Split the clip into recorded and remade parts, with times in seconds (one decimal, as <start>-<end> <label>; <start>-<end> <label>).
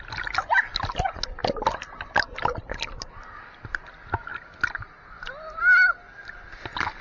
0.0-7.0 recorded